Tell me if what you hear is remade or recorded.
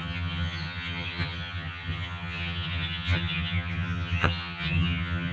remade